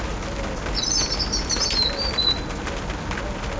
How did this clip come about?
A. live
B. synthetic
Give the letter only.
A